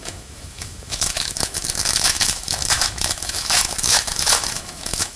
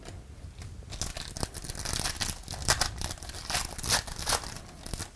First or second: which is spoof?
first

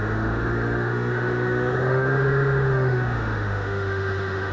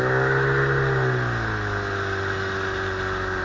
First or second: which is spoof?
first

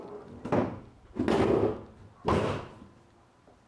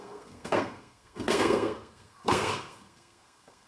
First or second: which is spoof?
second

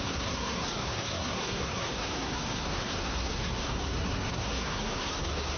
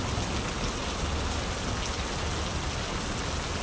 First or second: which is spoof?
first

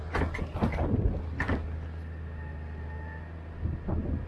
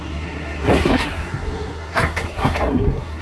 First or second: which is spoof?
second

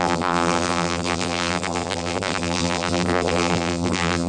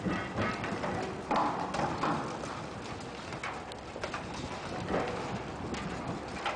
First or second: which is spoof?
first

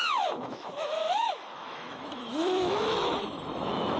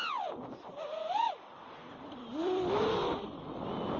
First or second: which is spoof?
first